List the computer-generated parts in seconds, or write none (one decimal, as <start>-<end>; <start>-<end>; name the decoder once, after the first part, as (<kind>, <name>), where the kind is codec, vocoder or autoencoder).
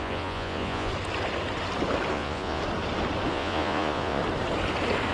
0.0-0.9 (vocoder, Vocos); 2.1-2.6; 3.3-4.2